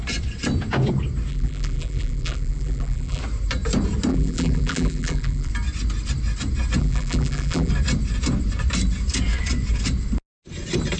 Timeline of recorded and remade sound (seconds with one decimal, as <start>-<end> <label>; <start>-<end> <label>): 0.0-1.3 recorded; 1.3-3.2 remade; 3.2-4.1 recorded; 4.1-5.5 remade; 5.5-6.8 recorded; 6.8-7.7 remade; 7.7-11.0 recorded